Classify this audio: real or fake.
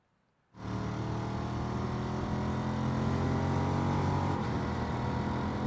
real